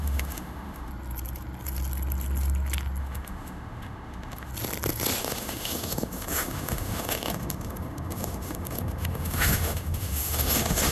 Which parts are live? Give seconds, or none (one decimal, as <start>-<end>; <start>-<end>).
0.9-3.0; 4.5-5.2